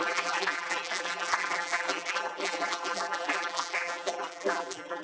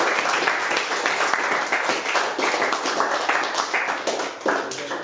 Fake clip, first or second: first